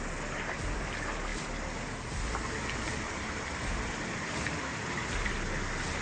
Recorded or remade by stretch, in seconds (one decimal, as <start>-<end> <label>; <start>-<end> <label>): 0.0-6.0 recorded